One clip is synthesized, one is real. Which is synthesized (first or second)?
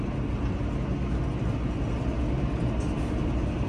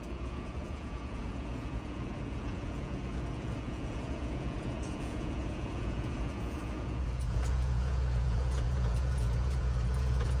second